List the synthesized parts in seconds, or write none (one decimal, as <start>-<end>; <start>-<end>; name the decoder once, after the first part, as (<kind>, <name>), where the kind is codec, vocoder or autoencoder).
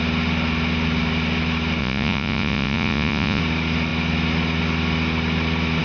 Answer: 1.8-3.4 (vocoder, Vocos)